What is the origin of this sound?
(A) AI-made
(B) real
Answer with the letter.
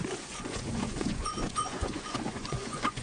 A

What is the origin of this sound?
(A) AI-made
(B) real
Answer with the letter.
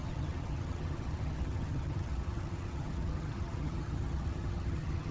A